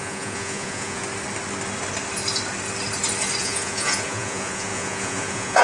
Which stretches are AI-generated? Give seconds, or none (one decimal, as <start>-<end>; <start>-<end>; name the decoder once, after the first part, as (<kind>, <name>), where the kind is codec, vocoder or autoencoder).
0.0-1.0 (vocoder, Vocos); 3.4-5.6